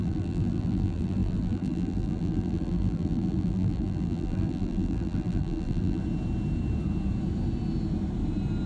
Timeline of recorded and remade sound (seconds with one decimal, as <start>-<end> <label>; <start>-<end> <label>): 0.0-6.0 remade; 6.0-8.7 recorded